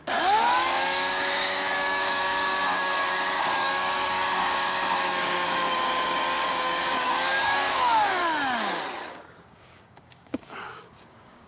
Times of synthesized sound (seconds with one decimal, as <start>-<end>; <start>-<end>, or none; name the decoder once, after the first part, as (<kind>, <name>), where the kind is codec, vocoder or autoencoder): 0.0-8.2 (codec, DAC); 9.1-11.5